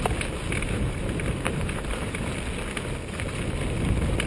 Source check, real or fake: real